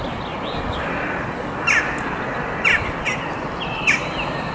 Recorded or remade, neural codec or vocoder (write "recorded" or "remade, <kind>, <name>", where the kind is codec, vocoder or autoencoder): remade, vocoder, BigVGAN v2